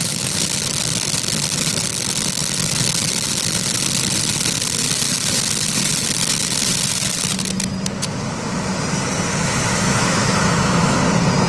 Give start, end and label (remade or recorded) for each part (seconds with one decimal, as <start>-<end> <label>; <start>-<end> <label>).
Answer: 0.0-9.4 recorded; 9.4-11.0 remade; 11.0-11.5 recorded